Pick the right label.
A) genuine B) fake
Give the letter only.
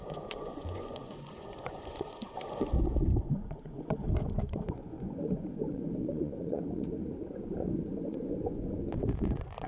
B